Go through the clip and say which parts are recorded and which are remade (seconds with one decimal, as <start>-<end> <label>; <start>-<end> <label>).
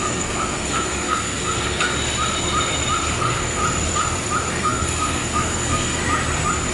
0.0-1.9 remade; 1.9-3.2 recorded; 3.2-3.6 remade; 3.6-4.5 recorded; 4.5-6.0 remade; 6.0-6.7 recorded